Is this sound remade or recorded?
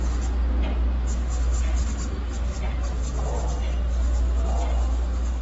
recorded